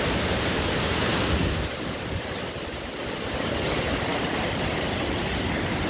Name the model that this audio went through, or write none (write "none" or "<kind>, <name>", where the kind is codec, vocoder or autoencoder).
none